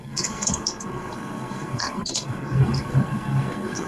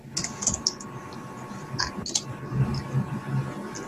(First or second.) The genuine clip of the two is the second